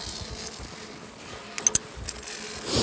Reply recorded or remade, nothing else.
recorded